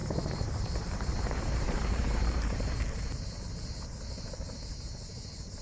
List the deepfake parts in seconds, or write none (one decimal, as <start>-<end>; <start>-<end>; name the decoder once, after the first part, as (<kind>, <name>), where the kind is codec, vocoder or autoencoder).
0.0-3.4 (vocoder, BigVGAN v2)